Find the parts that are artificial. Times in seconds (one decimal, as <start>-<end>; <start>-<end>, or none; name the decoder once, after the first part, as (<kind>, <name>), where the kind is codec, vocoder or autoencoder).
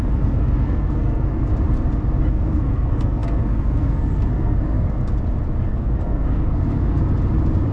0.0-1.5 (codec, SNAC); 2.3-5.0; 5.6-7.0